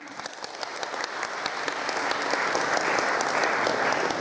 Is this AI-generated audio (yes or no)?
no